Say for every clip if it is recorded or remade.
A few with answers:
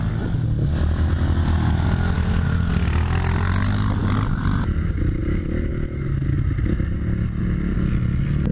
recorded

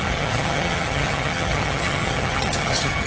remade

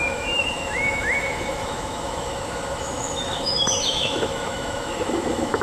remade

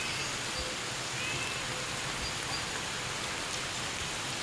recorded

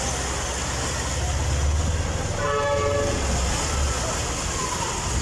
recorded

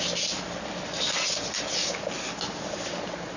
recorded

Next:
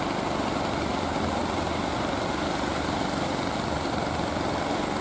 recorded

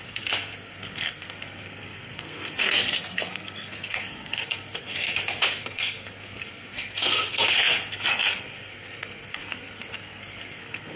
remade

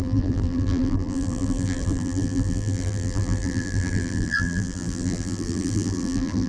remade